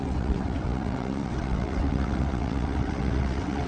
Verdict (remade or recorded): remade